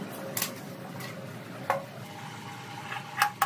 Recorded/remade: recorded